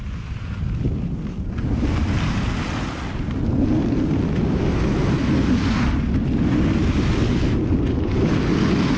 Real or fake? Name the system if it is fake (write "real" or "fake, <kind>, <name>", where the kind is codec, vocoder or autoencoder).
real